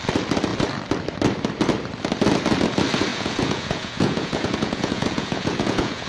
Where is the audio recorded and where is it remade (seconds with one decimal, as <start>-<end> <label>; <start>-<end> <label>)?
0.0-3.1 recorded; 3.1-6.1 remade